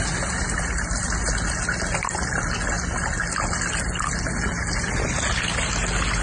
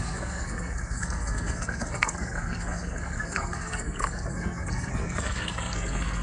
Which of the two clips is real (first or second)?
first